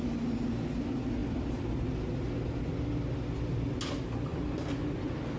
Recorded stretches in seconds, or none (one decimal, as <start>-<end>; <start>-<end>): 0.0-5.4